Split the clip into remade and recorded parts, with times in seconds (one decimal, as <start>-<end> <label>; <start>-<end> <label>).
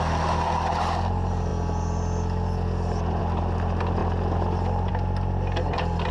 0.0-6.1 recorded